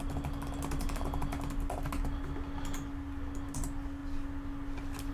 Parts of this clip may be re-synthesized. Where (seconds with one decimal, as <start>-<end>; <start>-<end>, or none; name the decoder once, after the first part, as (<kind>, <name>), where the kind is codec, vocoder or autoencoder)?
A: none